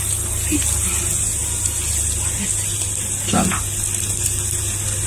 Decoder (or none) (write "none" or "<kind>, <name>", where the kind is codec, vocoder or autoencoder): none